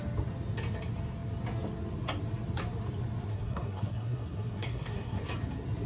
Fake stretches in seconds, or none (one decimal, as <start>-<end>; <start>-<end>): 3.3-5.2